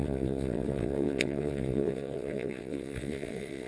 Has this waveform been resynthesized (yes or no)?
yes